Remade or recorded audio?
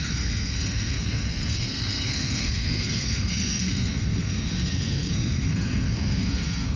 remade